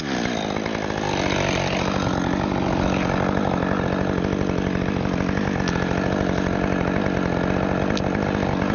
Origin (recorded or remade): recorded